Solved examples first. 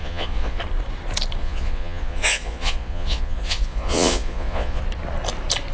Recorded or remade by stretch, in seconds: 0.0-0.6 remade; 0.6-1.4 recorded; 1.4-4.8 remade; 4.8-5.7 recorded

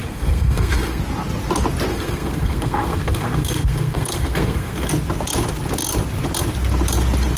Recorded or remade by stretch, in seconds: 0.0-1.0 remade; 1.0-1.9 recorded; 1.9-4.9 remade; 4.9-7.4 recorded

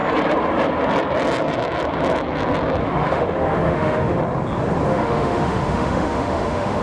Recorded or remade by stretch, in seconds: 0.0-2.8 recorded; 2.8-4.2 remade; 4.2-4.9 recorded; 4.9-6.8 remade

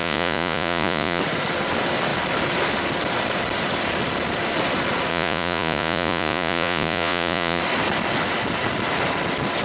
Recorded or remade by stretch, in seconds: 0.0-1.2 remade; 1.2-5.1 recorded; 5.1-7.6 remade; 7.6-9.6 recorded

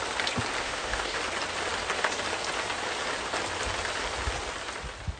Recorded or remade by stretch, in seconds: 0.0-0.6 recorded; 0.6-1.2 remade; 1.2-5.2 recorded

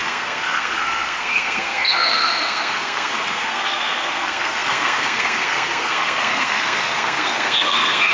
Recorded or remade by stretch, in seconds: 0.0-8.1 remade